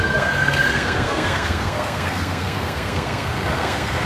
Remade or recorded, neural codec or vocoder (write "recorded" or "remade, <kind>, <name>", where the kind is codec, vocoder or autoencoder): remade, codec, SNAC